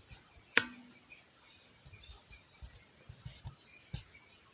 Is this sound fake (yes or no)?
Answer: no